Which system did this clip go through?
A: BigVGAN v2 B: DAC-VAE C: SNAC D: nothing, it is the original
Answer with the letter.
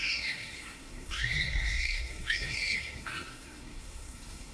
C